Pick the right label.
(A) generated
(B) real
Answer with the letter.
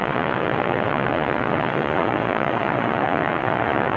A